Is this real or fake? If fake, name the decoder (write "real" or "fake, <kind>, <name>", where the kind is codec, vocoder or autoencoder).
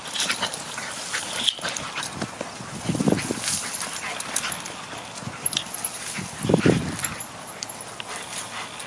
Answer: real